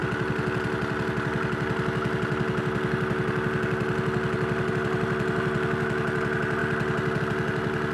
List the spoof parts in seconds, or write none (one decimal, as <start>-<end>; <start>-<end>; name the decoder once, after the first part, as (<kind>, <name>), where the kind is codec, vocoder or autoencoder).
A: none